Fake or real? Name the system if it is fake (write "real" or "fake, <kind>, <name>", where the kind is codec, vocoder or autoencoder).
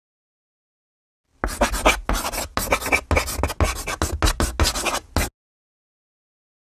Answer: real